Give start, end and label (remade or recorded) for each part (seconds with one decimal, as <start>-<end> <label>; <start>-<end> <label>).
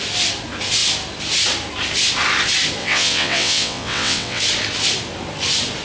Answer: 0.0-2.8 recorded; 2.8-4.4 remade; 4.4-5.8 recorded